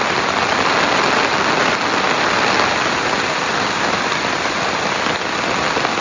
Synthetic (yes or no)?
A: no